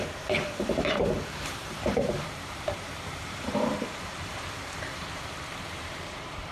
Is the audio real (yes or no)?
no